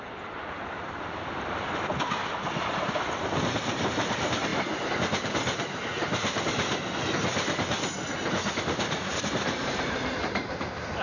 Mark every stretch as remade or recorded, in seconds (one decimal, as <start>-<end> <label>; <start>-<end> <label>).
0.0-2.2 remade; 2.2-3.3 recorded; 3.3-4.5 remade; 4.5-8.3 recorded; 8.3-11.0 remade